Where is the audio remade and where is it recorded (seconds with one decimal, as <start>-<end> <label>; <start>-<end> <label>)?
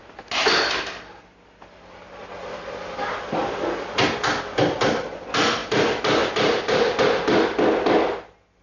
0.0-8.6 recorded